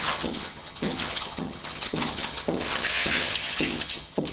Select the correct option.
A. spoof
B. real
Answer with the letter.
A